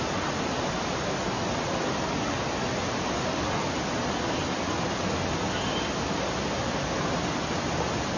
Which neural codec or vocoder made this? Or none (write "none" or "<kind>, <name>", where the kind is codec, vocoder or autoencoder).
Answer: none